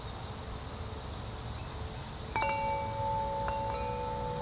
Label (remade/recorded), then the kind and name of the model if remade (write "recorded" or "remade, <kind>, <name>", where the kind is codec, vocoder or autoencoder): recorded